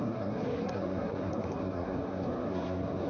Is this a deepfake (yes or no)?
yes